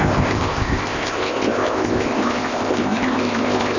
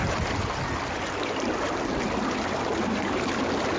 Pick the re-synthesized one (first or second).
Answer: first